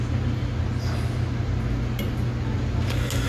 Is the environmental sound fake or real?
real